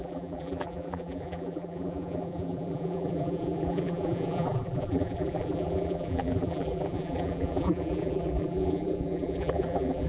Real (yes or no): no